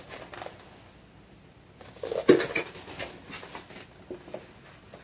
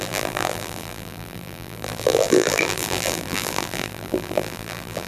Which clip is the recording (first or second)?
first